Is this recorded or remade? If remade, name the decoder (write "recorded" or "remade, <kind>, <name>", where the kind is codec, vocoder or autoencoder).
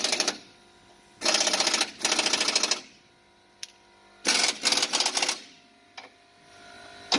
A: recorded